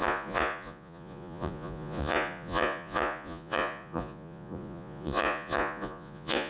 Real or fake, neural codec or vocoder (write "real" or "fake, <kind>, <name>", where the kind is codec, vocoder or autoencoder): fake, vocoder, Vocos